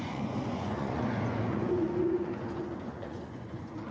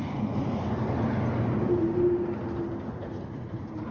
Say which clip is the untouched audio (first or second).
second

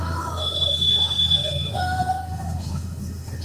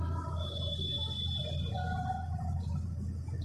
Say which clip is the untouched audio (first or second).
second